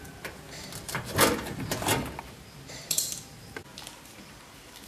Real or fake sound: fake